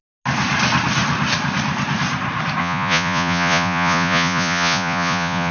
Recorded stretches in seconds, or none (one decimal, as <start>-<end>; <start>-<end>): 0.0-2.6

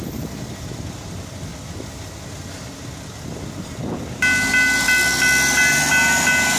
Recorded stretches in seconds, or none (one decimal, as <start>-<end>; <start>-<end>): 0.0-6.6

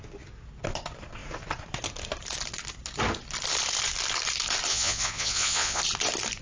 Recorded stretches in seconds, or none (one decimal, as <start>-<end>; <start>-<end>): 0.0-4.7; 5.8-6.4

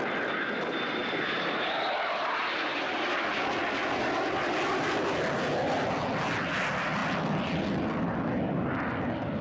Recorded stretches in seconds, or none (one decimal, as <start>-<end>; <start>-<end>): 0.0-9.4